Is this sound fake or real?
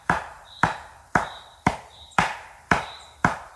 fake